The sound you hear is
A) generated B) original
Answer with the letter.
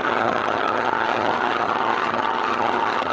A